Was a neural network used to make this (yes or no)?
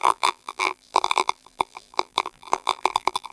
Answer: yes